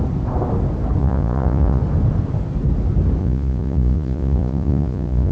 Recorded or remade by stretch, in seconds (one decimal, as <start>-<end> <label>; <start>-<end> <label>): 0.0-1.0 recorded; 1.0-1.8 remade; 1.8-3.2 recorded; 3.2-5.3 remade